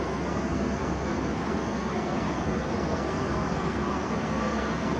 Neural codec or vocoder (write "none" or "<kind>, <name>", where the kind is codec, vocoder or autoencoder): codec, SNAC